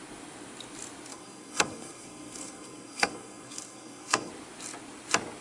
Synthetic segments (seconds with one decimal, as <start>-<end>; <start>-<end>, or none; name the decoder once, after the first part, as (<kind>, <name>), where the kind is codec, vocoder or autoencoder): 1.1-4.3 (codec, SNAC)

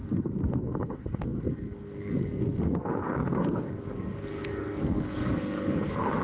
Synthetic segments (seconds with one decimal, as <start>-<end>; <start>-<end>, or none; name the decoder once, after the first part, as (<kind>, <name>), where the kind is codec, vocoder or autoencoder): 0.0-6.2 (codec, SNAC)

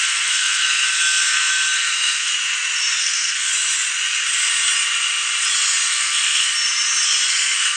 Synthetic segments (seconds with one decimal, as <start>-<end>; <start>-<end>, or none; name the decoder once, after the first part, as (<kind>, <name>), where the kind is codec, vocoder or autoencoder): 0.0-2.3 (codec, SNAC); 3.0-3.5; 5.9-6.5; 7.3-7.8

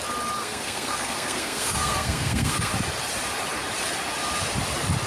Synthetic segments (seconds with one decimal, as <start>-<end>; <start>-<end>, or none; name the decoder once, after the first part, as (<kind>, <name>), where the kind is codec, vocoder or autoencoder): 0.4-2.7 (codec, SNAC)

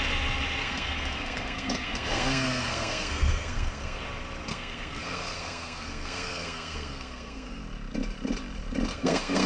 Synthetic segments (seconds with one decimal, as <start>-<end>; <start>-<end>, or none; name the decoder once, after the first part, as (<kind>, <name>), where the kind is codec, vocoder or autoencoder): 0.6-4.0 (codec, SNAC); 4.5-7.6; 8.9-9.5